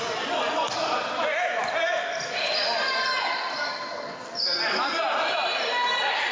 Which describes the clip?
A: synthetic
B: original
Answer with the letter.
B